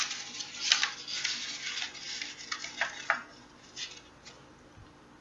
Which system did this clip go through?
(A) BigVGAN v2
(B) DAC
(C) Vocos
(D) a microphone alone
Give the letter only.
D